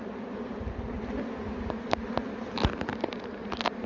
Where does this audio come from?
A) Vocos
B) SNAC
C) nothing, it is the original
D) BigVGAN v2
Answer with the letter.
C